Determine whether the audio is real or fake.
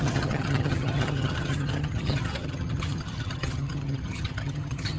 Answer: fake